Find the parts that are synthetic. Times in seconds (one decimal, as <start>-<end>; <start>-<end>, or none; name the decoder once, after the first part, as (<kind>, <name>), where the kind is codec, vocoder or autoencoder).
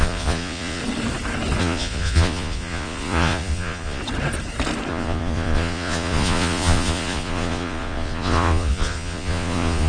0.0-0.8 (vocoder, Vocos); 1.6-4.0; 4.9-9.9